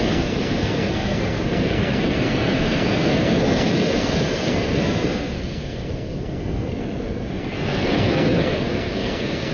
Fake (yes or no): yes